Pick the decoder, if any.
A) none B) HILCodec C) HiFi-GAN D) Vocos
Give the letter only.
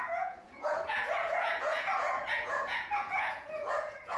D